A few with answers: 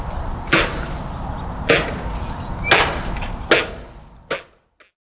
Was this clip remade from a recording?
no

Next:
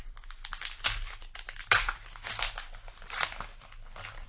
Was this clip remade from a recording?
no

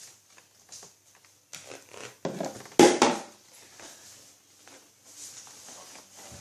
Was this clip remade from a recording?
no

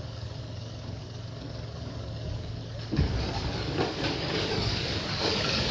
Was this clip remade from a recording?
yes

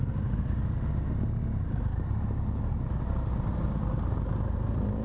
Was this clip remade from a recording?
no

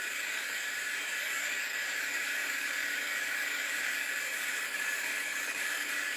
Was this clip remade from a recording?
yes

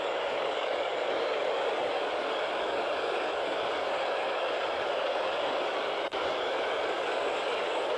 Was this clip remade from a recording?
yes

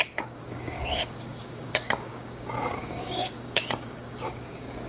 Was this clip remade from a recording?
yes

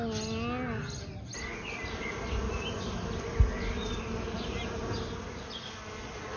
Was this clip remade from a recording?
no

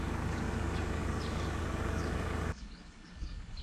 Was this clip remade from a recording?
yes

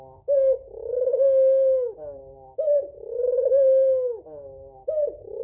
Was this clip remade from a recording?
yes